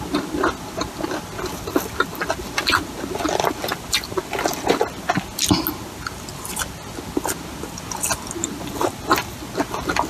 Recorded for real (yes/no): yes